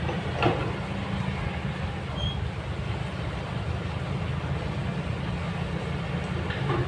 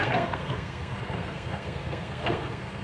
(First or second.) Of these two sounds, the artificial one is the second